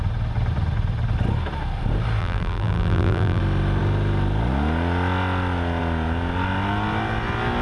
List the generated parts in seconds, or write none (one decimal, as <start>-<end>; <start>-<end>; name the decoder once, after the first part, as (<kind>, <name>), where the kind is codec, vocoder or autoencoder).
2.2-3.4 (vocoder, BigVGAN v2)